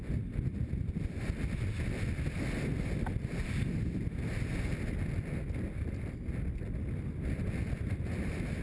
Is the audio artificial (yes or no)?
no